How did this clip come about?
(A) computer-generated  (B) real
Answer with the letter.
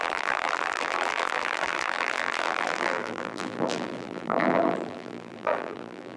A